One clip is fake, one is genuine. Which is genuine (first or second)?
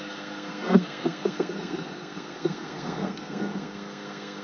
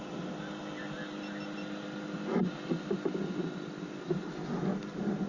second